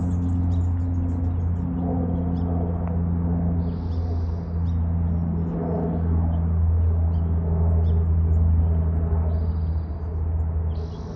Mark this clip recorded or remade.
recorded